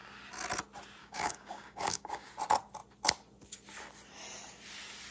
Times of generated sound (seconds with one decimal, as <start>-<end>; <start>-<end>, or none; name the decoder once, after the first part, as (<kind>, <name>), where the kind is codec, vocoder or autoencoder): 1.0-2.3 (codec, DAC)